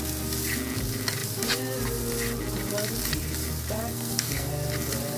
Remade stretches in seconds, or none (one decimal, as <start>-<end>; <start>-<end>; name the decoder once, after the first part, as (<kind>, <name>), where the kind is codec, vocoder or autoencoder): 3.9-4.5 (codec, SNAC)